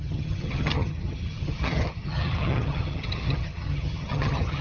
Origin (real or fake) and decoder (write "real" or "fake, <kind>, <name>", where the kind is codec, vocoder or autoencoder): fake, vocoder, HiFi-GAN